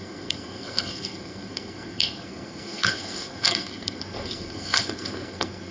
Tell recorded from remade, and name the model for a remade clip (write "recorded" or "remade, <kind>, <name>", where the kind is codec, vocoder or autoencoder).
remade, codec, SNAC